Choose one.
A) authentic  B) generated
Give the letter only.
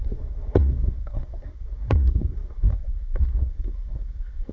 B